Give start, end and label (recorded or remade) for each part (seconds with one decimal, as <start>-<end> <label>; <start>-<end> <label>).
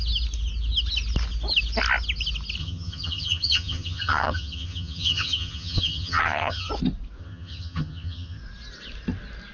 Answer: 0.0-2.6 recorded; 2.6-6.7 remade; 6.7-7.2 recorded; 7.2-8.4 remade; 8.4-9.5 recorded